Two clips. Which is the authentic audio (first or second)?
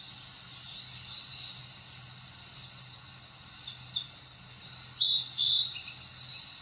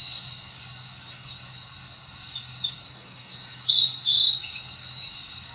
first